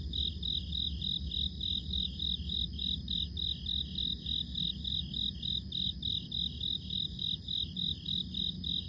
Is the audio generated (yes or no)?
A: no